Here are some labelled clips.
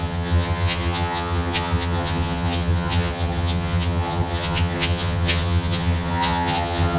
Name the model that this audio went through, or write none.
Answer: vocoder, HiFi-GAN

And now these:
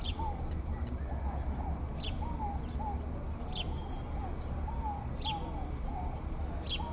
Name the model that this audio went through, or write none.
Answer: none